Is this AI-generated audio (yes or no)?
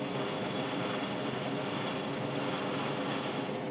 no